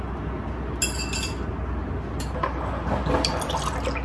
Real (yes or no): yes